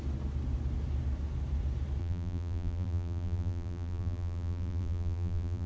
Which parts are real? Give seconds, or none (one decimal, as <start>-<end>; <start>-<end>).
0.0-2.0

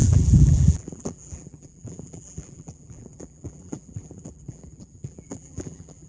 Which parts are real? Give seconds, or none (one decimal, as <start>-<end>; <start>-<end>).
none